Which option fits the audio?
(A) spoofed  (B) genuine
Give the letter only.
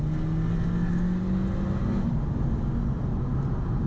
B